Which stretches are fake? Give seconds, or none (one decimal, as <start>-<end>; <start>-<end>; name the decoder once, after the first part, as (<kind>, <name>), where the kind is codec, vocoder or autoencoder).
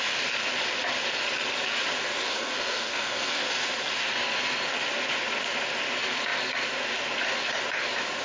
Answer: 2.3-3.5 (codec, SNAC)